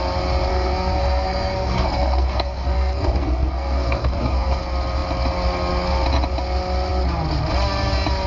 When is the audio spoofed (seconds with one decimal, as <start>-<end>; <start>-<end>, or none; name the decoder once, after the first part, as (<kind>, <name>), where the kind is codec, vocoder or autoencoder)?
0.5-4.6 (codec, SNAC)